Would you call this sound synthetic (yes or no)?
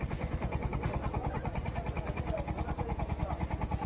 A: yes